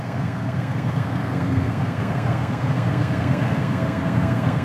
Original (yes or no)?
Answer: no